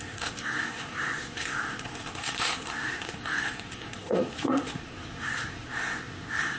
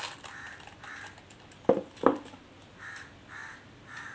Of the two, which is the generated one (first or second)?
first